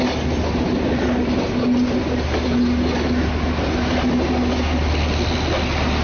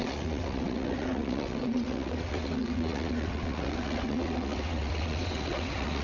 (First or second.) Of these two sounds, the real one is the first